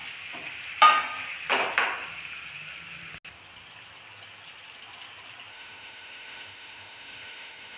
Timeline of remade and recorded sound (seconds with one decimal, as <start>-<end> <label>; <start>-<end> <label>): 0.0-5.5 recorded; 5.5-7.8 remade